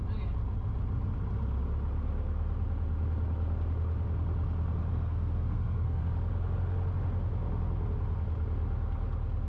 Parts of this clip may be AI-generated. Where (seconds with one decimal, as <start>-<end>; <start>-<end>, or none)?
4.9-6.0